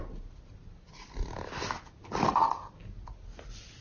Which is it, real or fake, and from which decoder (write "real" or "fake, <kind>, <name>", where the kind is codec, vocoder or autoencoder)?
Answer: real